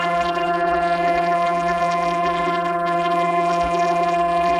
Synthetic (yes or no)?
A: yes